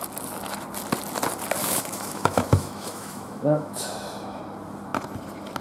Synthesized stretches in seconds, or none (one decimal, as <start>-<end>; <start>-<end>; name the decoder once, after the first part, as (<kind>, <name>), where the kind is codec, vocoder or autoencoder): 1.6-4.4 (autoencoder, DAC-VAE)